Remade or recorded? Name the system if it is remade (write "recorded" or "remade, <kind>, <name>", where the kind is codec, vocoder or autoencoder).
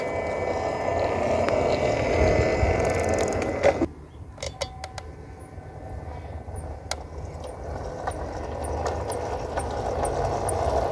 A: recorded